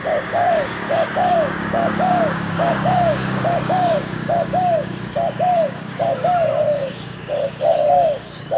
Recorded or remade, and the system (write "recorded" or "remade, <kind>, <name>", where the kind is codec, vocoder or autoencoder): remade, codec, DAC